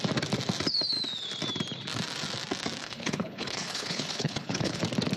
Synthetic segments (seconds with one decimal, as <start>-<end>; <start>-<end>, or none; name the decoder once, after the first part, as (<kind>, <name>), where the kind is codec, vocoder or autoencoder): 2.8-4.8 (codec, HILCodec)